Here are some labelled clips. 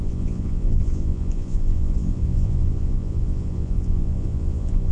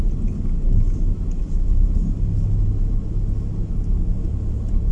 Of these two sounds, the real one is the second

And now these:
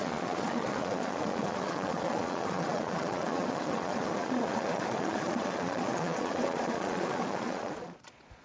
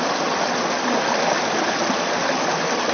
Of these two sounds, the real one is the second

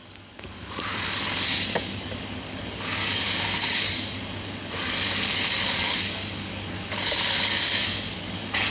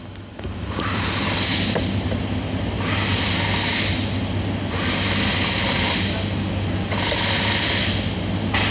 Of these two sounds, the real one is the second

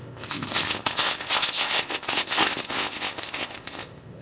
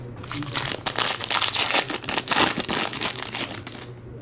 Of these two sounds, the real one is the second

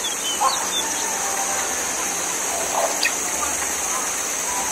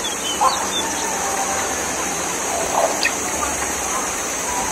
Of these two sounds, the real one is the first